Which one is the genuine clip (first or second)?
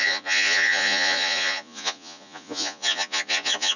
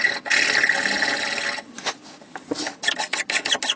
second